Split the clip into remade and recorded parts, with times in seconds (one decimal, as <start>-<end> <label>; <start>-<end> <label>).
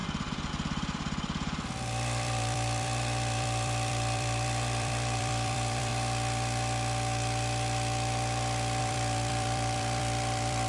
0.0-5.9 remade; 5.9-8.8 recorded; 8.8-10.7 remade